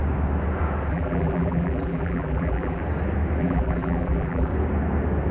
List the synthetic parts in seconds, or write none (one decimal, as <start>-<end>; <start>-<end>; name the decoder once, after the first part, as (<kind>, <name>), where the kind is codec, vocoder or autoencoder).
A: 0.9-2.8 (vocoder, BigVGAN v2); 3.4-4.5